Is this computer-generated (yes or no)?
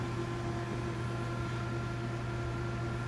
no